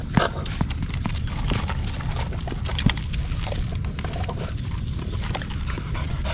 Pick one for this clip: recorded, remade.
recorded